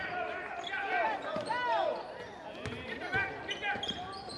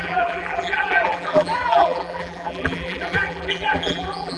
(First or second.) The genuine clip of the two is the first